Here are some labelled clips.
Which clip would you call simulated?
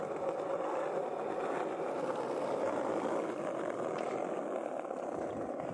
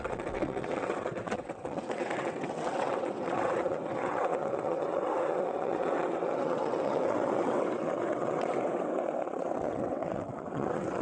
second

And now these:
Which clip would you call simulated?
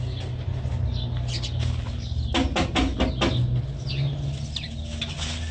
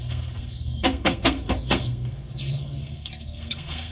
second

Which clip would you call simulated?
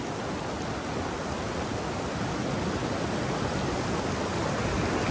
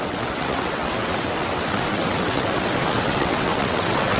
second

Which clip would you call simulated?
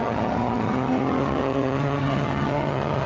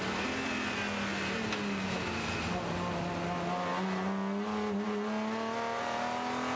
first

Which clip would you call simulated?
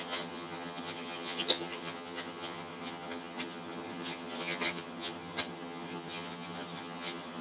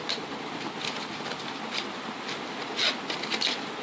first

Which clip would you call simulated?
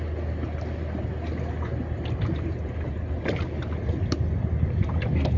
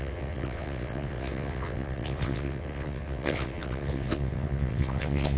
second